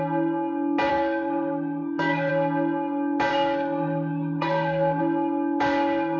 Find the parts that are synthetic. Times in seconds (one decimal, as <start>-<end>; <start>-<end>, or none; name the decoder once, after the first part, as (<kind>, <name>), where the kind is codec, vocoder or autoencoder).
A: 0.9-2.3 (codec, SNAC); 3.3-5.0